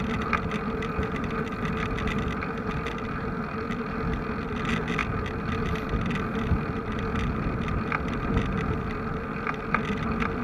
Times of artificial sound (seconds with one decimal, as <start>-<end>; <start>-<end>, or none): none